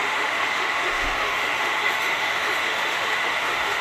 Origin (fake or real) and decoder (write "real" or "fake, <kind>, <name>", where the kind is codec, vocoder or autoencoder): fake, autoencoder, DAC-VAE